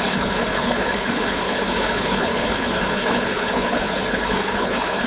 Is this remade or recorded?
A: remade